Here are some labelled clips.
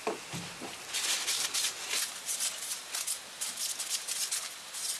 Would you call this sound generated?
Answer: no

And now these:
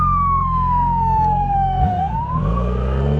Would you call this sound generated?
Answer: yes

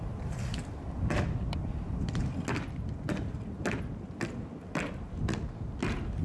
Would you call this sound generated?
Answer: no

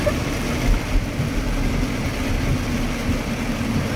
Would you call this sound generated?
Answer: no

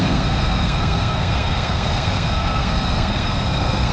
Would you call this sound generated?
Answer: yes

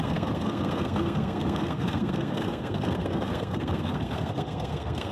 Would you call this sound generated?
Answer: yes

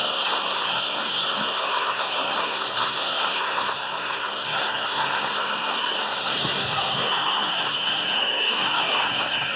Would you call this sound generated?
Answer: yes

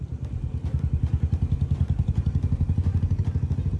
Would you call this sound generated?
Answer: no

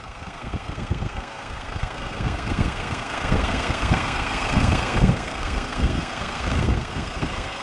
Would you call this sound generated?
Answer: yes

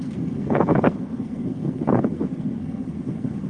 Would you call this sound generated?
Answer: yes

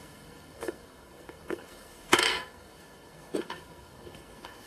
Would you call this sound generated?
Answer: yes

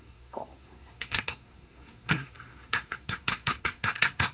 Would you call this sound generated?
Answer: yes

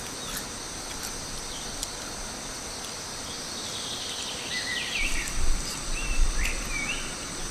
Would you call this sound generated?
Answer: no